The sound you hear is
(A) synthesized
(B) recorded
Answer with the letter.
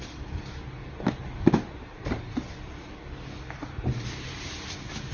B